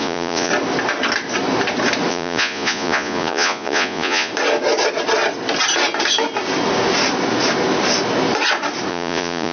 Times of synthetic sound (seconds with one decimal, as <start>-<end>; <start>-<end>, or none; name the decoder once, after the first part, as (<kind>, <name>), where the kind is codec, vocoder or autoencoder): 0.0-0.5 (vocoder, Vocos); 2.1-4.3; 8.9-9.5